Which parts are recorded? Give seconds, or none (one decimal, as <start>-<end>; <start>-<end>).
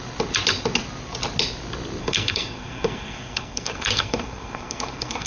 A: 0.0-2.0